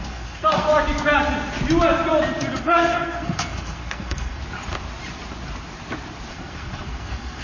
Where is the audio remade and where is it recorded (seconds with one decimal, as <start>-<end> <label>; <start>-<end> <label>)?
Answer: 0.0-0.7 remade; 0.7-2.6 recorded; 2.6-4.4 remade; 4.4-6.3 recorded; 6.3-7.4 remade